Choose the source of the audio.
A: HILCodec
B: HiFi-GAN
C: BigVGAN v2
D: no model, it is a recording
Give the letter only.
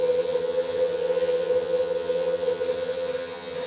B